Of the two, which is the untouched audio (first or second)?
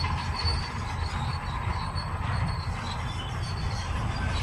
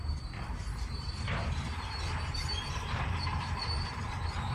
first